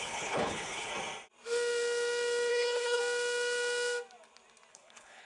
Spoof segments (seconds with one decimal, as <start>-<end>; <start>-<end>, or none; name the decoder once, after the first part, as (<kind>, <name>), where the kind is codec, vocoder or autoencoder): 0.0-0.9 (codec, HILCodec); 2.5-3.0; 4.7-5.2